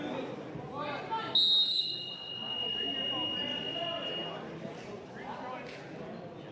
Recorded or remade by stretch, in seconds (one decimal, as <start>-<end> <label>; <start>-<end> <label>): 0.0-6.5 recorded